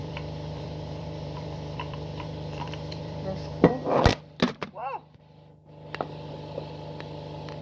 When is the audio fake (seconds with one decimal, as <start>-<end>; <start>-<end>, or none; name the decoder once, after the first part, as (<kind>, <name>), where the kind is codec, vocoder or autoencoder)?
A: 0.0-3.7 (vocoder, BigVGAN v2)